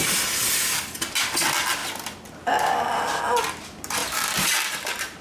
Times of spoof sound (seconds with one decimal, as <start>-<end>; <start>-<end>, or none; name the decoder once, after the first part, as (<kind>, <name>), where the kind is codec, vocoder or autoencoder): 4.0-5.2 (vocoder, BigVGAN v2)

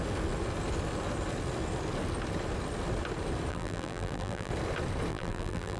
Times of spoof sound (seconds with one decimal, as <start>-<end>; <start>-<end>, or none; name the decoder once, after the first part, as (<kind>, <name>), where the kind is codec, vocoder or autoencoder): 3.5-4.5 (vocoder, BigVGAN v2); 5.1-5.8

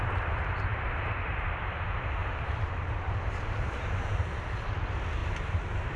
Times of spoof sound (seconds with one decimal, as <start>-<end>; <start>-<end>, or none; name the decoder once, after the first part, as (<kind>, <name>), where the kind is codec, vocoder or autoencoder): 0.7-4.3 (vocoder, BigVGAN v2); 5.2-6.0

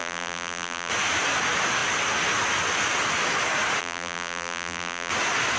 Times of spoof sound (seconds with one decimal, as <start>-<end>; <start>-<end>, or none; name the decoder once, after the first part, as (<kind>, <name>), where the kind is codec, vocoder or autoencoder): 0.0-0.9 (vocoder, BigVGAN v2); 3.8-5.1

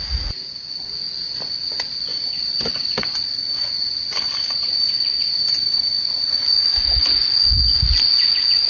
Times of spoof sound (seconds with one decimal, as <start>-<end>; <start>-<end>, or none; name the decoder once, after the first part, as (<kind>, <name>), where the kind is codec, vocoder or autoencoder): 2.1-7.2 (vocoder, BigVGAN v2)

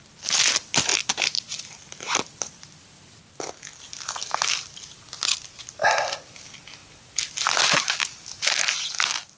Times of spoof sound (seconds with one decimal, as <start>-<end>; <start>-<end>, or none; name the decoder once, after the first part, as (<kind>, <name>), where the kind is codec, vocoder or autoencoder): 0.9-3.4 (vocoder, BigVGAN v2)